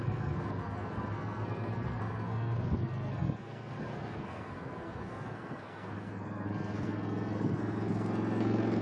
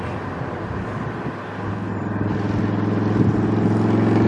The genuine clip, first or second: second